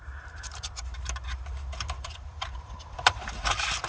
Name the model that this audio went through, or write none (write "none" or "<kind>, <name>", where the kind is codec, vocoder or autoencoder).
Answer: vocoder, BigVGAN v2